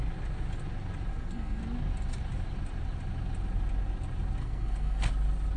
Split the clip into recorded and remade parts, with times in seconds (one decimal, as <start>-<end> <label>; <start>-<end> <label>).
0.0-1.1 recorded; 1.1-1.6 remade; 1.6-4.4 recorded; 4.4-5.1 remade; 5.1-5.6 recorded

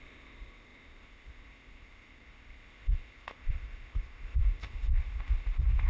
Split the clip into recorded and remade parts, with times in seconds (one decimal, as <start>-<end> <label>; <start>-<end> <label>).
0.0-5.9 remade